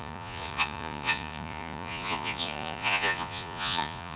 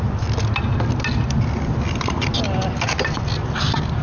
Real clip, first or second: second